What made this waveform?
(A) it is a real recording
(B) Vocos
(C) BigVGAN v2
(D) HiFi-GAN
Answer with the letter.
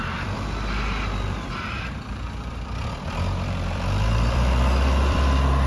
C